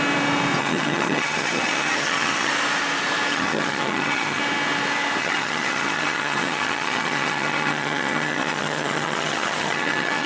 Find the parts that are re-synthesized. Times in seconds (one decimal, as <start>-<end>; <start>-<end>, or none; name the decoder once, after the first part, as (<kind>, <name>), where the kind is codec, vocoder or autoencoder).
0.6-2.5 (vocoder, HiFi-GAN); 3.3-4.4; 5.2-10.3

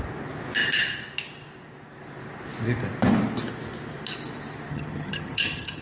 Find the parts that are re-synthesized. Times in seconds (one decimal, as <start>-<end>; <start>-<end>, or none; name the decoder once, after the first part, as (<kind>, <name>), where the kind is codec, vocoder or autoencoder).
4.7-5.8 (vocoder, HiFi-GAN)

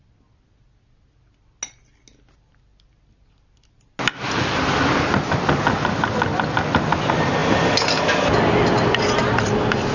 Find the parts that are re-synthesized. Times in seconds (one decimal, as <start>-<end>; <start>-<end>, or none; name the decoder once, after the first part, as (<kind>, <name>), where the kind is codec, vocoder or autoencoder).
none

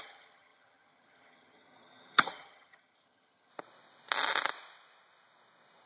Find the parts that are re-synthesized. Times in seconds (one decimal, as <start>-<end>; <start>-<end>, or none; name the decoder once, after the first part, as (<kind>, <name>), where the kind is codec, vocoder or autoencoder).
0.0-3.5 (vocoder, HiFi-GAN)

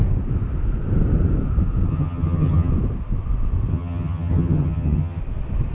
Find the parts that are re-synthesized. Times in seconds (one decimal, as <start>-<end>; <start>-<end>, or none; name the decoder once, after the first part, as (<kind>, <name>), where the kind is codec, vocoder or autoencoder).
1.9-2.7 (vocoder, HiFi-GAN); 3.7-5.2